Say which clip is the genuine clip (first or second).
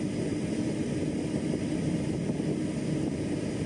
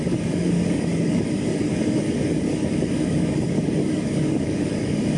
first